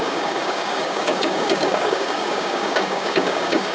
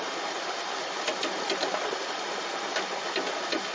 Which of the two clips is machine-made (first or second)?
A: first